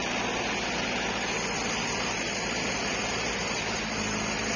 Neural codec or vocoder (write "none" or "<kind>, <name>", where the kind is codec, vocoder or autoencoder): none